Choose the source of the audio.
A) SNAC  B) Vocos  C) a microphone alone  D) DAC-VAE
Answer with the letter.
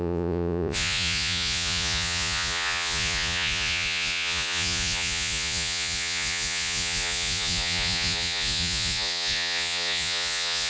B